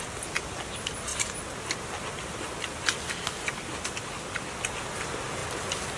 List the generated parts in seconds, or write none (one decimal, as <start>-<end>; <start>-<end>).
none